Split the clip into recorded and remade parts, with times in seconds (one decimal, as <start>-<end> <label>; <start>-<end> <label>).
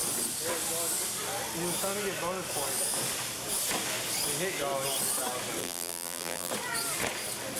0.0-5.6 recorded; 5.6-6.5 remade; 6.5-7.6 recorded